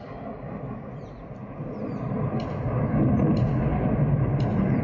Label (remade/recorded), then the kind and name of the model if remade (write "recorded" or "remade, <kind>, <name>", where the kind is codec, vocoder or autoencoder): recorded